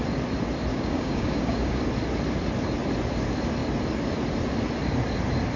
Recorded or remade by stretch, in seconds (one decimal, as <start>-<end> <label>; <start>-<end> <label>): 0.0-0.7 recorded; 0.7-1.8 remade; 1.8-5.6 recorded

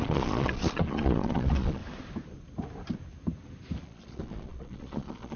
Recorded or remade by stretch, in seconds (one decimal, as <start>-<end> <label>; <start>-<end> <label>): 0.0-1.8 remade; 1.8-3.8 recorded; 3.8-5.4 remade